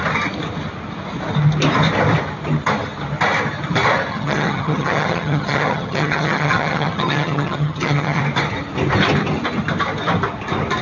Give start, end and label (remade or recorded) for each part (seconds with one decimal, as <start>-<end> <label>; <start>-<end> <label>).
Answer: 0.0-4.1 recorded; 4.1-8.2 remade; 8.2-10.8 recorded

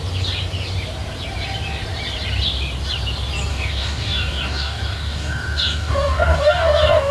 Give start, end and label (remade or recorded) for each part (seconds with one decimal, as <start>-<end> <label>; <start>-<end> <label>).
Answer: 0.0-3.5 recorded; 3.5-7.1 remade